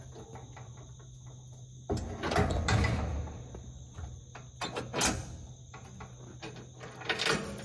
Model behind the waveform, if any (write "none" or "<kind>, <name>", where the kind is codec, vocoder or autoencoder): none